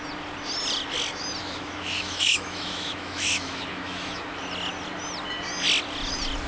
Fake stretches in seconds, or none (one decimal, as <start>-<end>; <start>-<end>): 1.4-4.4